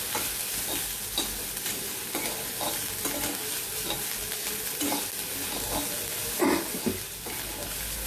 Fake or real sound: real